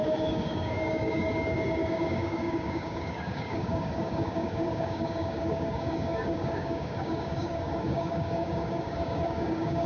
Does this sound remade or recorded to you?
remade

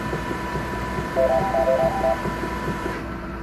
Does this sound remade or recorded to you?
remade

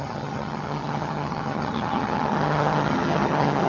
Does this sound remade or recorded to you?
remade